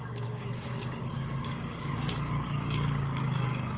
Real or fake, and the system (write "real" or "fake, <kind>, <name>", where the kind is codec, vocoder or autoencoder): fake, codec, DAC